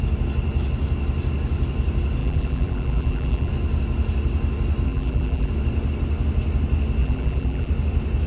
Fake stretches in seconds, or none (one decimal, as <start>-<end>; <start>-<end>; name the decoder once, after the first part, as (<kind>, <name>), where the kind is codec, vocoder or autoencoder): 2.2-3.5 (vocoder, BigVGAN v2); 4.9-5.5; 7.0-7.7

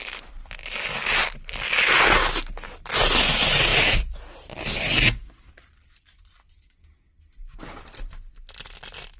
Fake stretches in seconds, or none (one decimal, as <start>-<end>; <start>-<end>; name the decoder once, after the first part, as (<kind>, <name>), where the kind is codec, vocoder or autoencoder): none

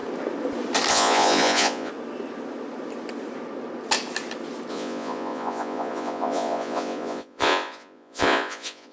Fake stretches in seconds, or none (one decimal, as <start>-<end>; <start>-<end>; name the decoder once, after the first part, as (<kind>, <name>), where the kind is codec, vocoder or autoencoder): 0.9-1.9 (vocoder, Vocos); 4.7-8.9